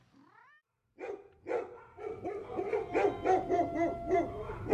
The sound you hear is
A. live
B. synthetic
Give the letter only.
A